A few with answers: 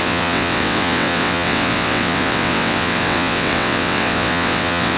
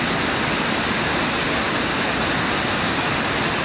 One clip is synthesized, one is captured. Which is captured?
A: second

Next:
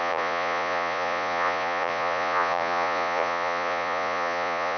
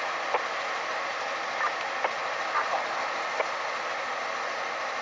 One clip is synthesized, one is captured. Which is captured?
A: second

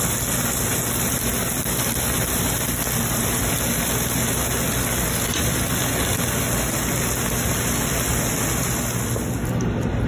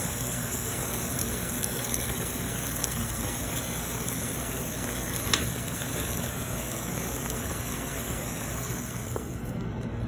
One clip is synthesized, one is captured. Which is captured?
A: first